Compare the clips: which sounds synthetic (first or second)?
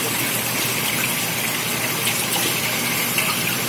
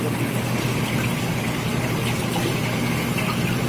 first